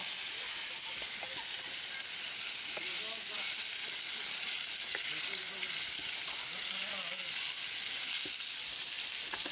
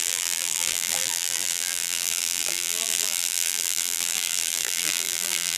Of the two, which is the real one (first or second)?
first